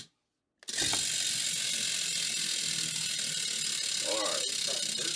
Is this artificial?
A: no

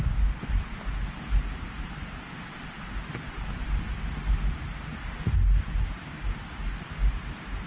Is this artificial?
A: no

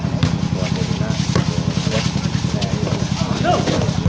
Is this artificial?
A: no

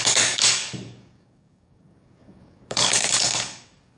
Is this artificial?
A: yes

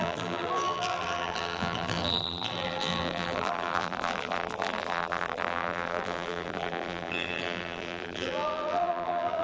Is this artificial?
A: yes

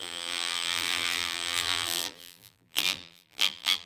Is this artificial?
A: yes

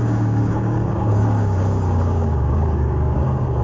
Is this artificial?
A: yes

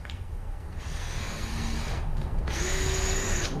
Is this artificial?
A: yes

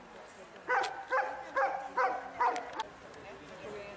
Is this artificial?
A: no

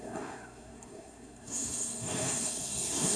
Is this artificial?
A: yes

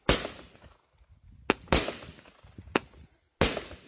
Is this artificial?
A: no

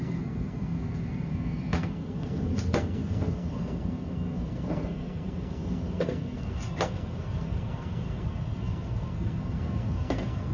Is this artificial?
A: yes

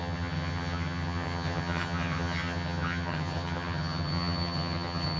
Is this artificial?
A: yes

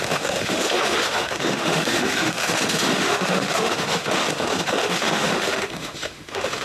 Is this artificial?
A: yes